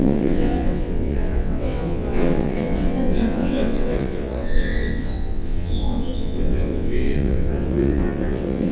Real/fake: fake